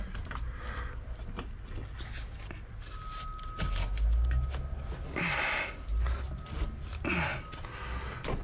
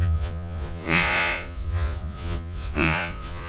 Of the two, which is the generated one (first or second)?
second